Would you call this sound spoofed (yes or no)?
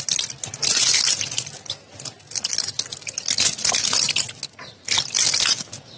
no